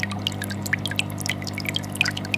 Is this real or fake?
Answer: real